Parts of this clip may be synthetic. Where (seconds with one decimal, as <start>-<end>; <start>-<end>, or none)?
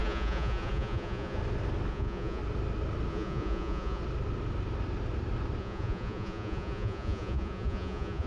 0.0-1.4; 1.9-2.4; 3.1-4.0; 5.6-8.3